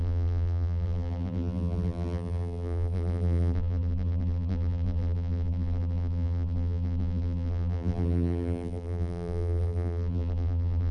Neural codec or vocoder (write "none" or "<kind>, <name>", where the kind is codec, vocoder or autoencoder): vocoder, BigVGAN v2